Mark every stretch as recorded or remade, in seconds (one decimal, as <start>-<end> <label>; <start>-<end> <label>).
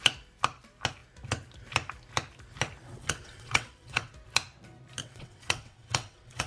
0.0-2.8 recorded; 2.8-4.1 remade; 4.1-5.0 recorded; 5.0-6.5 remade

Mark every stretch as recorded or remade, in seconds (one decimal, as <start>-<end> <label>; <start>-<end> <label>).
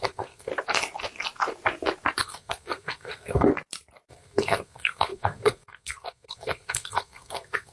0.0-0.5 remade; 0.5-2.2 recorded; 2.2-3.5 remade; 3.5-4.1 recorded; 4.1-7.7 remade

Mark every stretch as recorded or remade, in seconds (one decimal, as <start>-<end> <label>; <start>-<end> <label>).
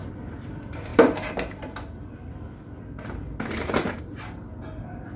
0.0-5.2 recorded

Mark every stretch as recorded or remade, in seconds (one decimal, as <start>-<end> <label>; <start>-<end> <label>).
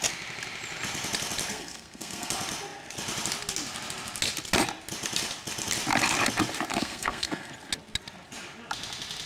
0.0-1.5 recorded; 1.5-2.3 remade; 2.3-6.7 recorded; 6.7-7.5 remade; 7.5-9.3 recorded